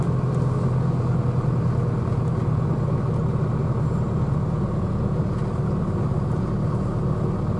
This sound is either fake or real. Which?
real